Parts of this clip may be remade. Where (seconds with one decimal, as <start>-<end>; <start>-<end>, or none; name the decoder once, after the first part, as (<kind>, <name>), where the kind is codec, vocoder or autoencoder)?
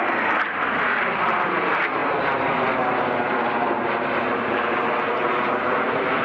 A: none